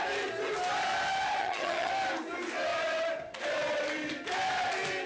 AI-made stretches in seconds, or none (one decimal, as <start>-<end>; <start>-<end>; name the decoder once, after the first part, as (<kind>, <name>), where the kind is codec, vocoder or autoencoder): 1.4-1.9 (vocoder, HiFi-GAN)